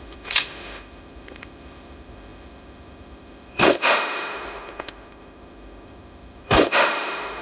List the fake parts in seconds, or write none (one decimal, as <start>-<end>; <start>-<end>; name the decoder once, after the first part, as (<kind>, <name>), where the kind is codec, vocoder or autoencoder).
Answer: 0.0-7.4 (autoencoder, DAC-VAE)